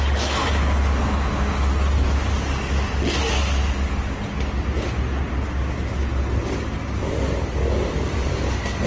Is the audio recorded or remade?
recorded